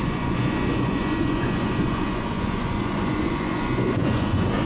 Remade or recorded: remade